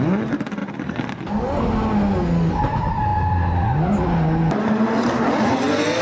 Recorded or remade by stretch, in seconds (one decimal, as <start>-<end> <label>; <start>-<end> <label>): 0.0-6.0 recorded